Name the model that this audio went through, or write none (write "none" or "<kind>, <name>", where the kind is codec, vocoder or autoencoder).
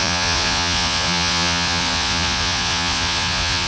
vocoder, Vocos